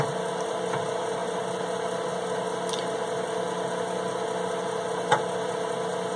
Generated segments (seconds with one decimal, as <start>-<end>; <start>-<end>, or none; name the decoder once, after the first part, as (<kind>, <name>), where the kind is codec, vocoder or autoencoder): none